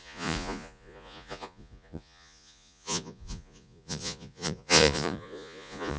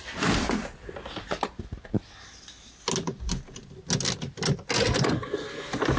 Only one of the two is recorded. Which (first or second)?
second